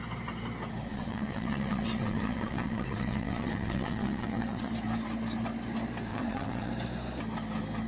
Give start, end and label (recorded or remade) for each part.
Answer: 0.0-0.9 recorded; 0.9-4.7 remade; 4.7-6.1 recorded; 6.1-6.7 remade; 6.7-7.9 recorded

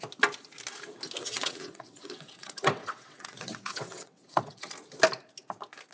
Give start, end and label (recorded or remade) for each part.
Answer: 0.0-1.2 recorded; 1.2-4.7 remade; 4.7-5.9 recorded

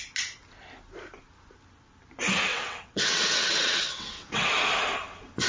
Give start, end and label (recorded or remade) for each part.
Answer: 0.0-2.5 recorded; 2.5-4.5 remade; 4.5-5.5 recorded